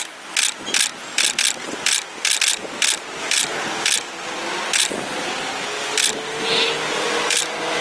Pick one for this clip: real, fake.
real